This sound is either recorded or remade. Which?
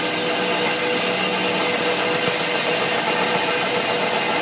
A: recorded